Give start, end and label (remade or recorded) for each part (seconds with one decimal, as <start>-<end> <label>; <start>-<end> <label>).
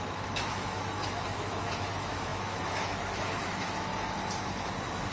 0.0-3.9 remade; 3.9-5.1 recorded